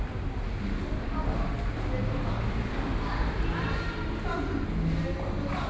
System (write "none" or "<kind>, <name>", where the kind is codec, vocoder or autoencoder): none